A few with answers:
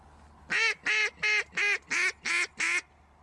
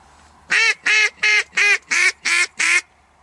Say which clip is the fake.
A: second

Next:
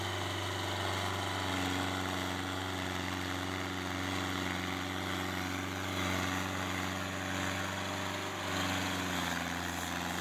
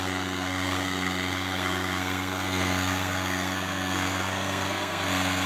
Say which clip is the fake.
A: second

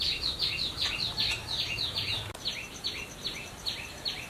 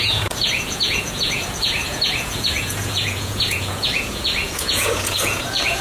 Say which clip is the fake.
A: second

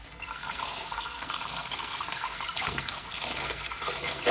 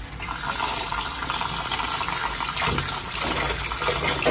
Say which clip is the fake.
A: first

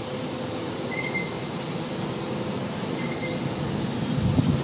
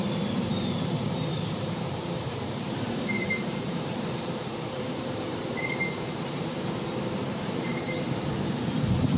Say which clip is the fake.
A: second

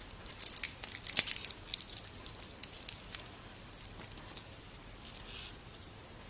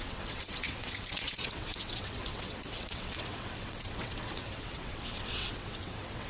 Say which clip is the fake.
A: second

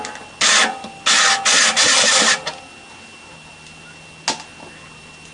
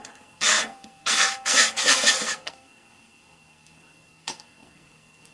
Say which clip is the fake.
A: second